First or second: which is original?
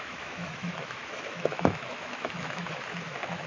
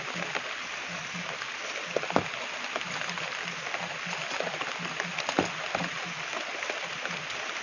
second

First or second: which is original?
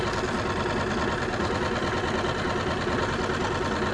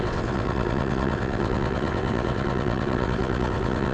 first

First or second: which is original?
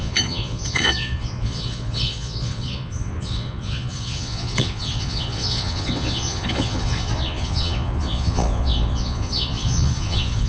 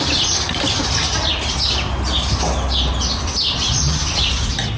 second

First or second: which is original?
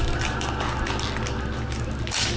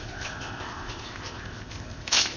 first